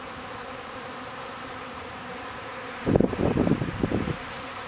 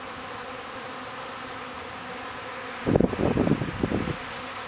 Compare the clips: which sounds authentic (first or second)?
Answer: second